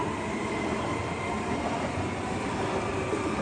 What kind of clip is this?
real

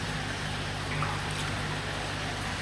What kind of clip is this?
real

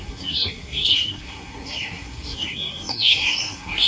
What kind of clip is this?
fake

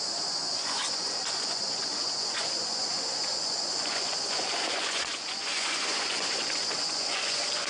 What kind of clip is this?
fake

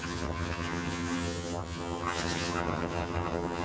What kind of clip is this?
fake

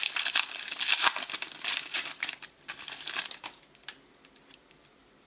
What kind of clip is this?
fake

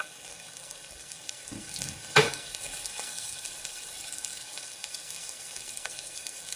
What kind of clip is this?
fake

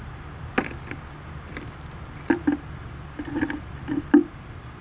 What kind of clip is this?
fake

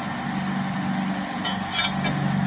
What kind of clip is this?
real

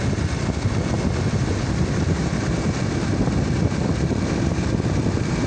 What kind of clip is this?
real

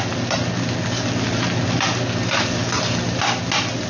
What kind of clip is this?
real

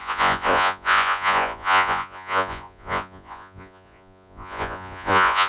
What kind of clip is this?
fake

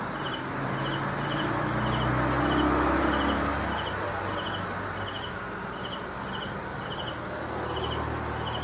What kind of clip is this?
real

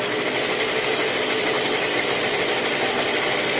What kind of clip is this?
real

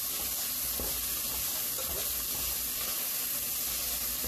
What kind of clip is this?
real